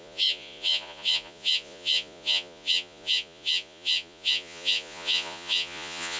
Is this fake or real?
fake